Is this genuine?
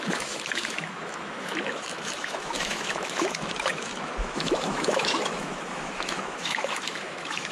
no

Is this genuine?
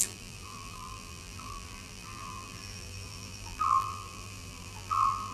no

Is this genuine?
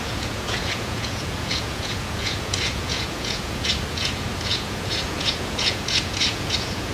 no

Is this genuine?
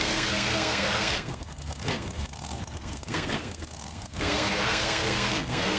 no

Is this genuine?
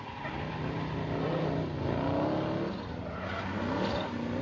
yes